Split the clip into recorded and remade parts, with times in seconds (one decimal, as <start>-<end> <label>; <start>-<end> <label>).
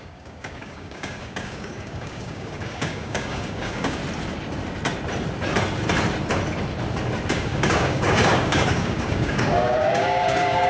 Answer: 0.0-4.0 remade; 4.0-7.3 recorded; 7.3-10.7 remade